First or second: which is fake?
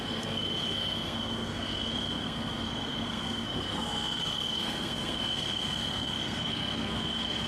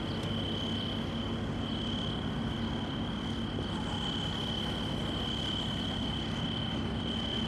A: first